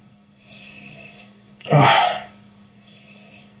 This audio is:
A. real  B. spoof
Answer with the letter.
B